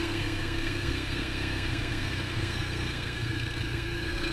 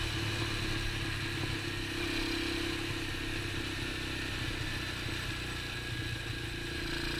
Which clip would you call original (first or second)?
second